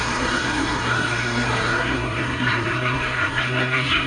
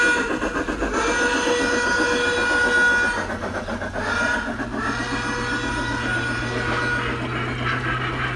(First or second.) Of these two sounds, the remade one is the first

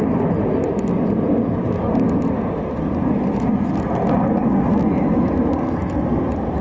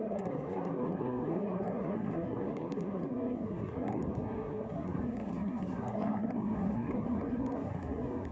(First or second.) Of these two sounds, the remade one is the second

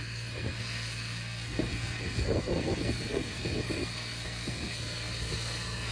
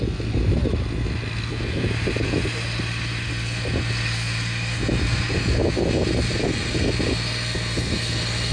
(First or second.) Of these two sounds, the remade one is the first